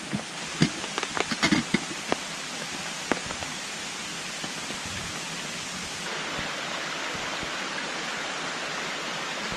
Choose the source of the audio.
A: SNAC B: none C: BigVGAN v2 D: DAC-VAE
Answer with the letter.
B